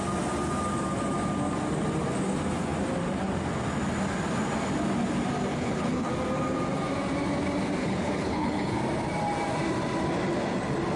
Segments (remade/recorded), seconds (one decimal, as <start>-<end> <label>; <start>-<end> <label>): 0.0-5.5 recorded; 5.5-6.1 remade; 6.1-7.8 recorded; 7.8-8.8 remade; 8.8-11.0 recorded